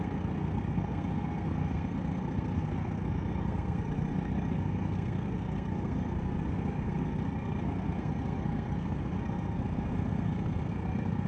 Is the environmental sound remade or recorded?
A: remade